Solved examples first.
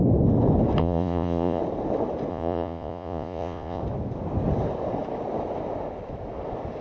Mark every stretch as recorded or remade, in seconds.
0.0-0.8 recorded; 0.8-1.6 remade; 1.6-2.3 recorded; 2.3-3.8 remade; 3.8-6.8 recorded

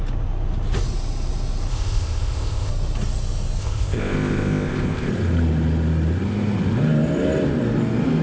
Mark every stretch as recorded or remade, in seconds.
0.0-1.7 recorded; 1.7-2.7 remade; 2.7-3.6 recorded; 3.6-5.1 remade; 5.1-8.2 recorded

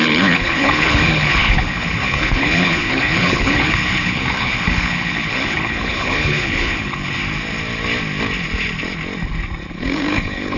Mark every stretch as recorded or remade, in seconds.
0.0-7.2 remade; 7.2-9.7 recorded; 9.7-10.6 remade

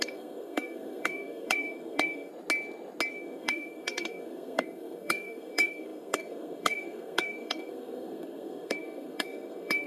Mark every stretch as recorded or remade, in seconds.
0.0-2.3 remade; 2.3-3.1 recorded; 3.1-9.9 remade

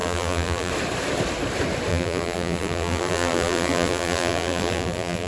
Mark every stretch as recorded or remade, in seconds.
0.0-0.7 remade; 0.7-1.9 recorded; 1.9-5.3 remade